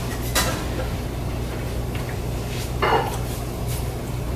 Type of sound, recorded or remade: recorded